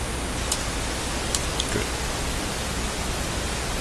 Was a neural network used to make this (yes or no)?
no